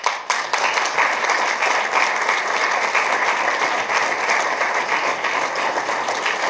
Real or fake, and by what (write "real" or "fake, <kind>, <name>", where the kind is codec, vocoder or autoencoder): real